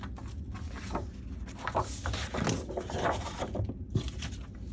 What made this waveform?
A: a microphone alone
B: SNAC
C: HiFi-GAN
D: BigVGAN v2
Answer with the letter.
A